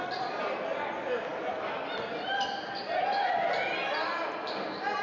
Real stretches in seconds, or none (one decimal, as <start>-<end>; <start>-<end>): 0.0-5.0